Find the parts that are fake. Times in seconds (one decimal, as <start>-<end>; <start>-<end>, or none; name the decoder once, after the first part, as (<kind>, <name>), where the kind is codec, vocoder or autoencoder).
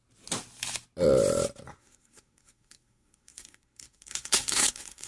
1.8-5.1 (codec, SNAC)